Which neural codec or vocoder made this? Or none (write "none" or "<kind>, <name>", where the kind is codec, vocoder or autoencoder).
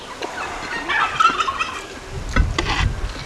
none